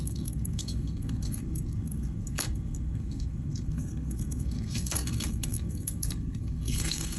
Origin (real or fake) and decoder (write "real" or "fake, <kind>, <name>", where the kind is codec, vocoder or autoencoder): fake, codec, SNAC